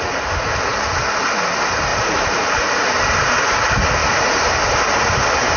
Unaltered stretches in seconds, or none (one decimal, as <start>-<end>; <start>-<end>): 0.0-1.9; 3.4-4.0; 4.8-5.6